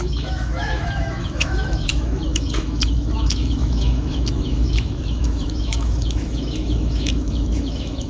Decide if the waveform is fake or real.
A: fake